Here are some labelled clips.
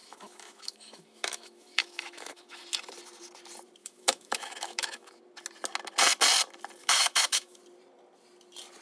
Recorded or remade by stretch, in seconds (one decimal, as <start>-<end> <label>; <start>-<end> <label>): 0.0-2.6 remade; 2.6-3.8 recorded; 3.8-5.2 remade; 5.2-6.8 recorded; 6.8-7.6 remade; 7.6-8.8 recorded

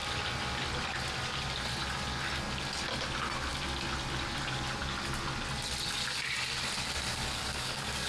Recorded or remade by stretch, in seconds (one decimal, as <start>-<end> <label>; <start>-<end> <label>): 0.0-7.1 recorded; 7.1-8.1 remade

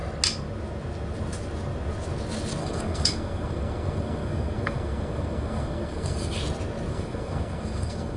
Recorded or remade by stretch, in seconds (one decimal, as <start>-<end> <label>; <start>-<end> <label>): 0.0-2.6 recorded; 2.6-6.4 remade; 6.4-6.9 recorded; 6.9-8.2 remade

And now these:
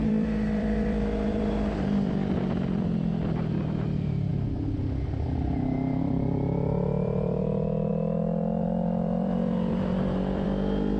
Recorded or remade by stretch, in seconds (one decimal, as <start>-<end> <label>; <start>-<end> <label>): 0.0-4.3 remade; 4.3-6.0 recorded; 6.0-7.9 remade; 7.9-8.6 recorded; 8.6-11.0 remade